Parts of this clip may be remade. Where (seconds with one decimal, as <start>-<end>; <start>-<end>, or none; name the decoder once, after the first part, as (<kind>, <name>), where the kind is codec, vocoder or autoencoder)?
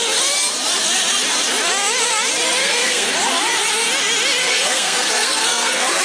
2.6-3.1 (codec, SNAC); 4.4-6.0